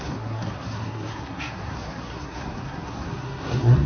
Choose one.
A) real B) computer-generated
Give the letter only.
B